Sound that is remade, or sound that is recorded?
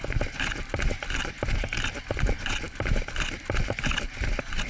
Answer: recorded